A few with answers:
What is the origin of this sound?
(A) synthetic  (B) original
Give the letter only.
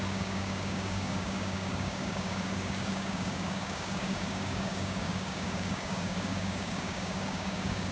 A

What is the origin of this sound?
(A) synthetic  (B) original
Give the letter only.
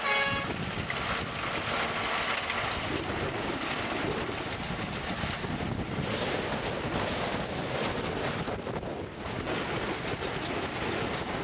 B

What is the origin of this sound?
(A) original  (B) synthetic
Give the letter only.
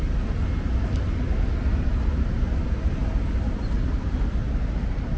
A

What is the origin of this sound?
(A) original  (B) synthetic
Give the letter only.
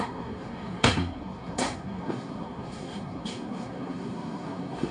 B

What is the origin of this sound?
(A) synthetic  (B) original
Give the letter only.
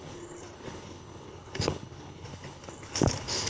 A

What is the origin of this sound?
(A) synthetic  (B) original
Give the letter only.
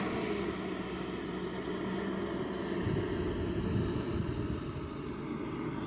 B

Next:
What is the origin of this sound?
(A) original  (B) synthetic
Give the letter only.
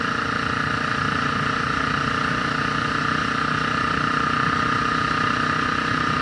A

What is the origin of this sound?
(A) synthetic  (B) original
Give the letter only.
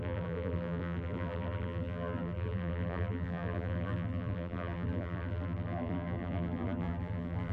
A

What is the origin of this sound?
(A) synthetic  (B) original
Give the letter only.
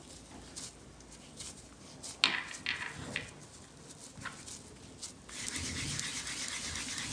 B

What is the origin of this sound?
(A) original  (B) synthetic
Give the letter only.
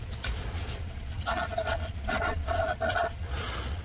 B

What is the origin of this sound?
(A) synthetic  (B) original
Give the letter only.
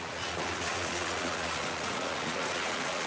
A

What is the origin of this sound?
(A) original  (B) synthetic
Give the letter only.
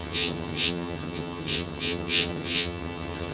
B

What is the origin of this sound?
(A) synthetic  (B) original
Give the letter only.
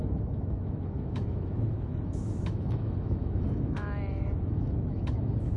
A